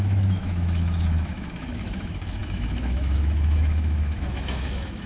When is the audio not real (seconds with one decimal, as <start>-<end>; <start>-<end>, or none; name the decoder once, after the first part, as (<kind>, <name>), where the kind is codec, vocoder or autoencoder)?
0.0-5.1 (autoencoder, DAC-VAE)